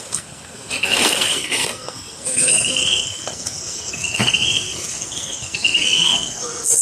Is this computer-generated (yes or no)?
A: yes